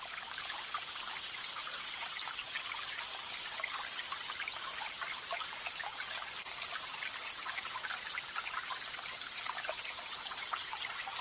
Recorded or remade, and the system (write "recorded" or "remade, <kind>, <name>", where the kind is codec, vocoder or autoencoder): recorded